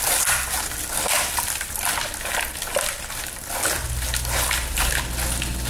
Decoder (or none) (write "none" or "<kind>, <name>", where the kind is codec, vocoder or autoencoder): none